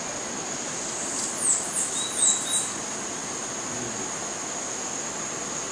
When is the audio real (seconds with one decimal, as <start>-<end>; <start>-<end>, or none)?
0.0-5.7